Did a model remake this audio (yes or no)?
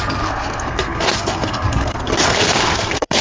yes